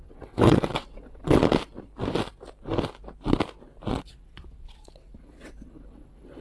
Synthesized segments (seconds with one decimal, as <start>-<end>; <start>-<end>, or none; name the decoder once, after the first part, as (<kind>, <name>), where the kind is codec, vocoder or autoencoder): 0.0-1.4 (vocoder, WaveNeXt); 3.9-6.4